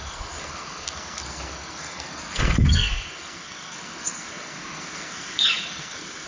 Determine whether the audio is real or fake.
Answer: fake